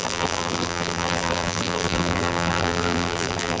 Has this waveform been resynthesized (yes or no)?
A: yes